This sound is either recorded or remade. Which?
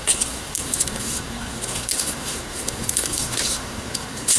remade